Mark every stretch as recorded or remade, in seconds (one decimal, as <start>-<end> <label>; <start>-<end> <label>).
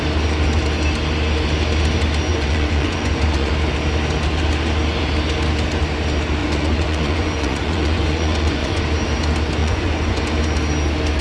0.0-2.3 recorded; 2.3-3.5 remade; 3.5-6.4 recorded; 6.4-8.8 remade; 8.8-9.6 recorded; 9.6-10.2 remade; 10.2-11.2 recorded